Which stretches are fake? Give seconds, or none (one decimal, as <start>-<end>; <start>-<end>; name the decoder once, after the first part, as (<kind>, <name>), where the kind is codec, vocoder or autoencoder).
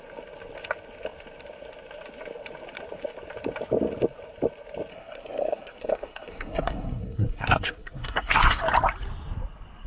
4.9-8.6 (codec, SNAC)